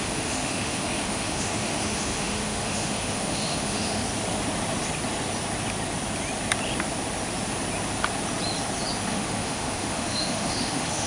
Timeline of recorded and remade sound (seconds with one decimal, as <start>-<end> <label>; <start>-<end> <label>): 0.0-4.0 remade; 4.0-9.1 recorded; 9.1-11.1 remade